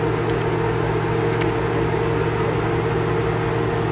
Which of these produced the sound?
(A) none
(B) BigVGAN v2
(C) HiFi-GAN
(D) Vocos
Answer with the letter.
A